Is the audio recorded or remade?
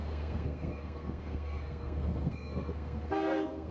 remade